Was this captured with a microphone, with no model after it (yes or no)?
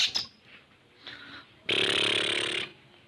yes